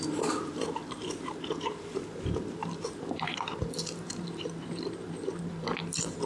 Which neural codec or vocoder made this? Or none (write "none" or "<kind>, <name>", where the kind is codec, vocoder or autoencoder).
vocoder, BigVGAN v2